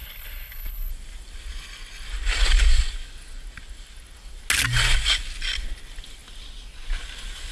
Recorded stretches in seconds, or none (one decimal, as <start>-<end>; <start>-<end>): 0.9-7.5